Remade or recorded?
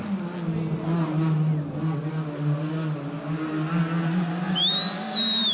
recorded